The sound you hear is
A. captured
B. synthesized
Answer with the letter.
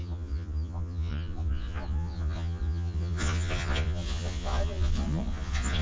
B